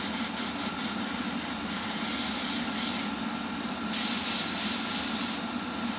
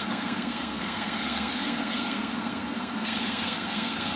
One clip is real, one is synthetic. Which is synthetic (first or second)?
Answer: second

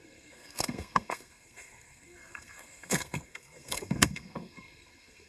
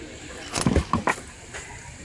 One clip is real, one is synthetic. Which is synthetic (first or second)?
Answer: first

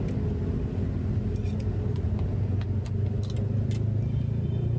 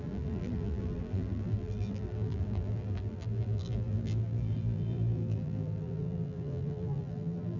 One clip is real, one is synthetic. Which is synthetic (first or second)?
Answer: second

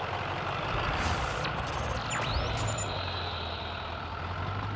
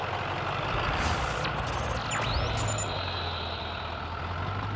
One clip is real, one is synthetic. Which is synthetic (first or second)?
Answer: first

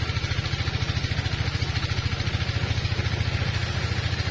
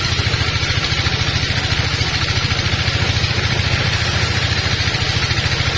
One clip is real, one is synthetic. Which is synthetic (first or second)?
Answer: second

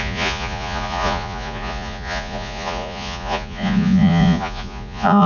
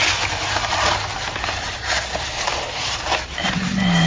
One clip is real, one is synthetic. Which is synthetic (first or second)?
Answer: first